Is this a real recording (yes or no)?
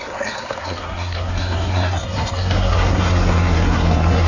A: no